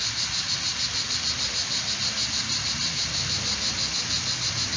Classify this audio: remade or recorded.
recorded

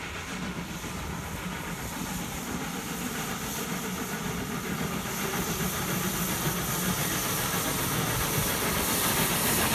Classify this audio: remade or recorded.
remade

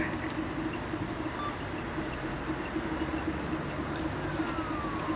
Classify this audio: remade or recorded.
recorded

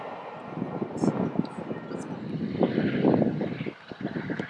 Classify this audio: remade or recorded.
recorded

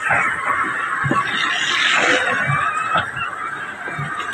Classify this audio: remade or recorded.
recorded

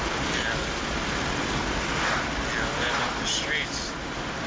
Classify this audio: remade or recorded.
remade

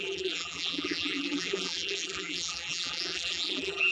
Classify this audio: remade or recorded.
remade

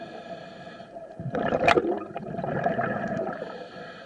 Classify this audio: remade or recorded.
remade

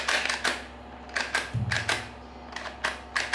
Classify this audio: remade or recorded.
recorded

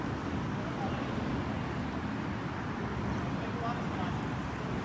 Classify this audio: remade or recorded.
recorded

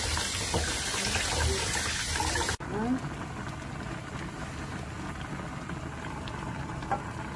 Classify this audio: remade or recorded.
recorded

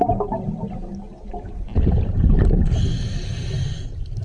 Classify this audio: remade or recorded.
recorded